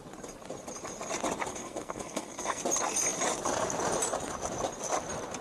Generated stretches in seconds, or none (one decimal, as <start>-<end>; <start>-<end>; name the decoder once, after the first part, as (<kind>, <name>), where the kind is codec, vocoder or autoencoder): 1.5-2.6 (codec, SNAC)